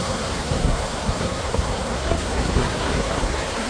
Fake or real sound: fake